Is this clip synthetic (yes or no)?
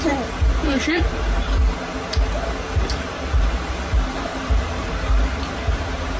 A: yes